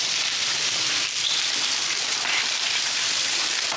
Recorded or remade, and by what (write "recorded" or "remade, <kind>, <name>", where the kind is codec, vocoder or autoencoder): remade, vocoder, BigVGAN v2